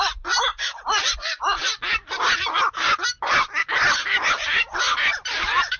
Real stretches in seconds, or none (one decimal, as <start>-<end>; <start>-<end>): 0.0-5.8